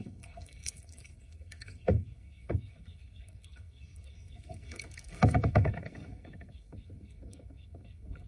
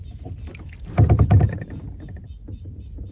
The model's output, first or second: first